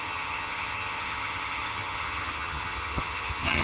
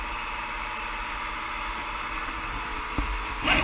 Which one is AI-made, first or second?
first